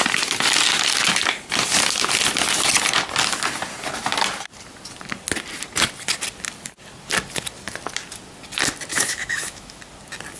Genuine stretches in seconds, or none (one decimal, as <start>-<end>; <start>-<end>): 0.0-8.9; 9.8-10.4